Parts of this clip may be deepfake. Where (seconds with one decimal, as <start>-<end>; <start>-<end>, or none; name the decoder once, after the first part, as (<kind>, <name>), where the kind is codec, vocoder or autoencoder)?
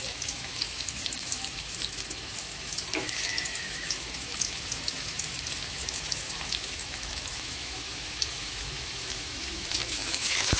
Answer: 0.0-10.6 (autoencoder, DAC-VAE)